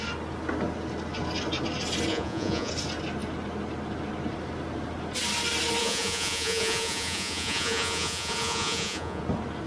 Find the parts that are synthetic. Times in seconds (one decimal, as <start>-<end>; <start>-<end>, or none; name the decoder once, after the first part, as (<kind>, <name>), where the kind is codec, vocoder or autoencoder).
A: 2.1-2.7 (vocoder, Vocos); 5.8-9.2